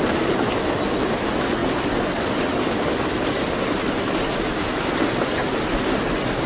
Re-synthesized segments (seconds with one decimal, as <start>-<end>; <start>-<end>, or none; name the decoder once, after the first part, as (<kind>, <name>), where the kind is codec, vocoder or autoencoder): none